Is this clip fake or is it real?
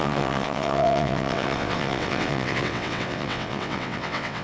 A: fake